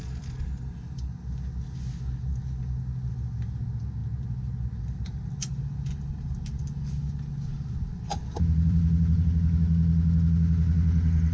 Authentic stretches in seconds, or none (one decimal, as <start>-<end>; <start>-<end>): 0.0-8.1; 9.2-11.3

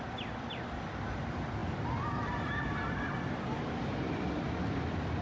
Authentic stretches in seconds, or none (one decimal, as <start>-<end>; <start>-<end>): 0.0-5.2

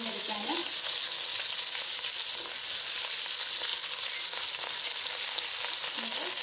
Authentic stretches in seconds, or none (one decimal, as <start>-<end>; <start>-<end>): 0.0-6.4

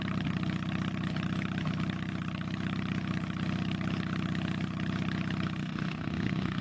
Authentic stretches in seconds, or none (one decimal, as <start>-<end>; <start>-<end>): 0.0-5.6

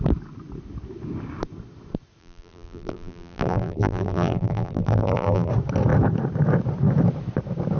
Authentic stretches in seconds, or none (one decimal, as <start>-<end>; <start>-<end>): 0.0-2.2; 5.5-7.8

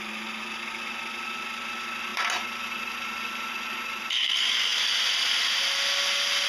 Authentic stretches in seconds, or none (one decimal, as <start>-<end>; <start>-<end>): 0.0-6.5

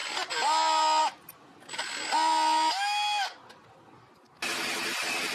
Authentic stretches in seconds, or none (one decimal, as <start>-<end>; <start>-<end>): 0.0-5.3